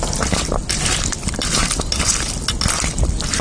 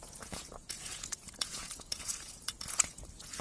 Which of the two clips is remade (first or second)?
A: second